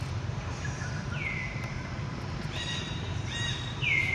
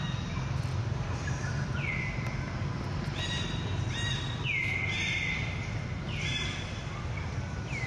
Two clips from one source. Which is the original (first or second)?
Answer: second